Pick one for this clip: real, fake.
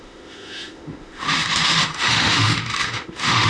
fake